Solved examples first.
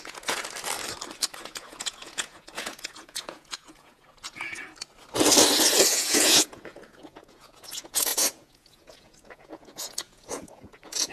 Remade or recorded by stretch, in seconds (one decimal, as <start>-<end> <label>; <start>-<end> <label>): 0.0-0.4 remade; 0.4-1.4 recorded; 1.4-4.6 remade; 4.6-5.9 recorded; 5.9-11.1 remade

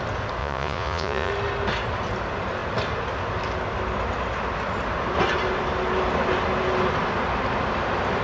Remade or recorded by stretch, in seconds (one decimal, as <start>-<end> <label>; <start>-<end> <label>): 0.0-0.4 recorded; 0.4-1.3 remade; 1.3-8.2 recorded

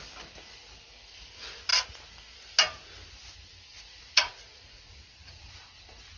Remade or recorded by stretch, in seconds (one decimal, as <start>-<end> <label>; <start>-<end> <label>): 0.0-3.7 recorded; 3.7-5.6 remade; 5.6-6.2 recorded

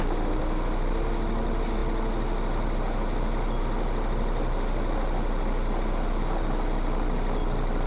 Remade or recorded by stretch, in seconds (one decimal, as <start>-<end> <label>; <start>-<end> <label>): 0.0-7.9 recorded